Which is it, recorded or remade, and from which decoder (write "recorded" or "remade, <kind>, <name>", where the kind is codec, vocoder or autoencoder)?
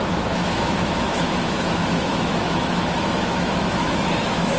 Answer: remade, autoencoder, DAC-VAE